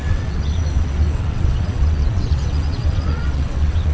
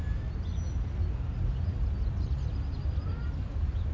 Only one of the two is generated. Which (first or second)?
first